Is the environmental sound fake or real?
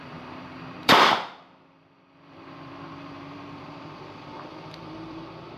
fake